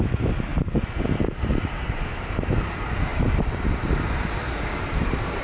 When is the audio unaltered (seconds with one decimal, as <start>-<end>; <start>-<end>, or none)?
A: none